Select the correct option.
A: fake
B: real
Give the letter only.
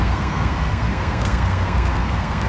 A